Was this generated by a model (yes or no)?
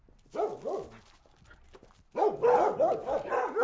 no